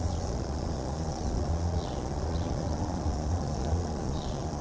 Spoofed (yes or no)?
yes